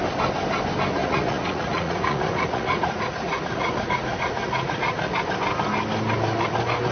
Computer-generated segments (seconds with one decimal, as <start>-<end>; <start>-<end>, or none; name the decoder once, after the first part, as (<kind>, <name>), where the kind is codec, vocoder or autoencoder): 1.0-5.1 (vocoder, Vocos)